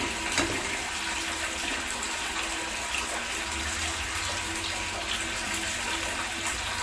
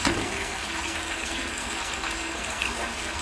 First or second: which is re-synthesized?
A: second